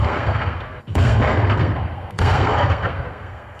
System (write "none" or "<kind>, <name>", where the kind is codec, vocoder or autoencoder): codec, SNAC